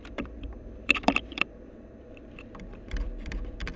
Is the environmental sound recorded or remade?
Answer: remade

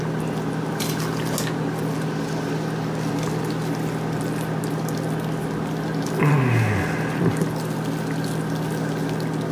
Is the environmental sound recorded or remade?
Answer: recorded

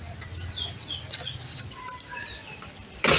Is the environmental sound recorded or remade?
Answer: remade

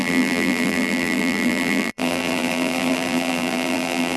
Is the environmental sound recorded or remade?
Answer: remade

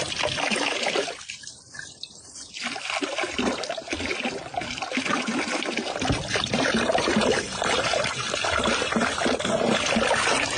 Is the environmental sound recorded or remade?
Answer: remade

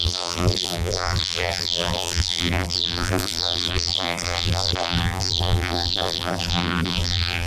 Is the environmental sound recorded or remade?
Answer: remade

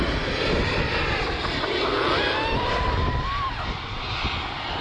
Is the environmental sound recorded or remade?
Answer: recorded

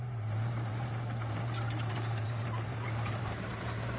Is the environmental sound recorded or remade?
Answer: remade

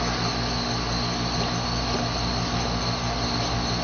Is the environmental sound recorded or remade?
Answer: recorded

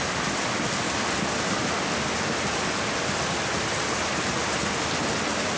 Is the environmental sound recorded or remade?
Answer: recorded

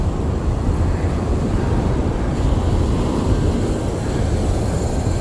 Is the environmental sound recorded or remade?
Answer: recorded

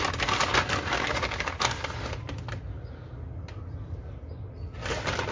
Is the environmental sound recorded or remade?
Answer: recorded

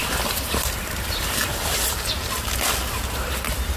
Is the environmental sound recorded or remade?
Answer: recorded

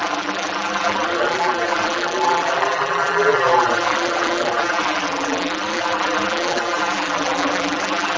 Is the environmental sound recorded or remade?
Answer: remade